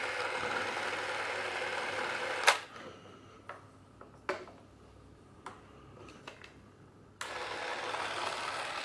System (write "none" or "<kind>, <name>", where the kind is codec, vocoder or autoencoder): none